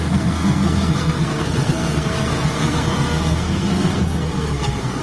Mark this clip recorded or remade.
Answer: remade